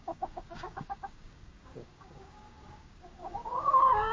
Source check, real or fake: fake